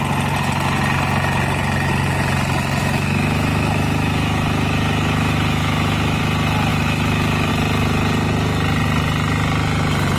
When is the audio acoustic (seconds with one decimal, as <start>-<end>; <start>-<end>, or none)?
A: 0.0-2.8; 6.2-6.7; 7.5-10.2